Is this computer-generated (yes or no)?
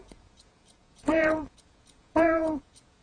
yes